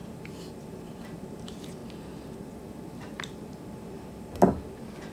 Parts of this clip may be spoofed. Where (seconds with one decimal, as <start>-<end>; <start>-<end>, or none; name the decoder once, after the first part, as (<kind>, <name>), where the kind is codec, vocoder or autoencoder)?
0.0-1.8 (vocoder, BigVGAN v2); 2.7-4.3